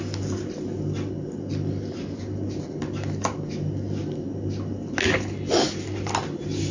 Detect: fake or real real